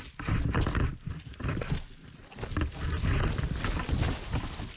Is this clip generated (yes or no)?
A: no